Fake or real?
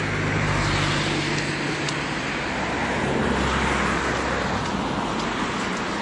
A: real